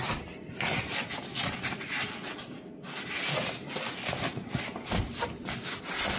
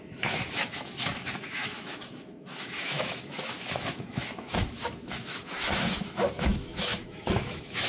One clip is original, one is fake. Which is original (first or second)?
first